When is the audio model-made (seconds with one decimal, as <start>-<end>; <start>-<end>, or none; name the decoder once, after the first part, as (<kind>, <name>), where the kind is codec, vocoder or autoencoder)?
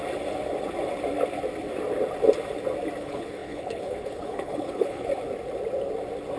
3.0-5.1 (codec, HILCodec)